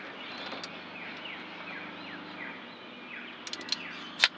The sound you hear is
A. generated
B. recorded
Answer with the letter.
B